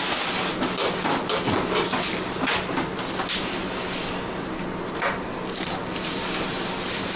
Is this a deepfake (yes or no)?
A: no